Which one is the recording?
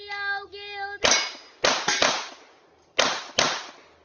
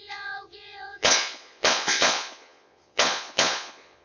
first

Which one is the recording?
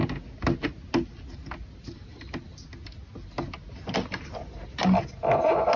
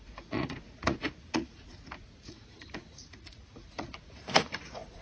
first